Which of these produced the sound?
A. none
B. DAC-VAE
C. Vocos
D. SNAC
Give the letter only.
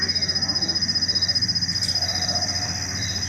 A